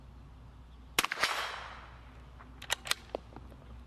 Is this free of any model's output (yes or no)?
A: yes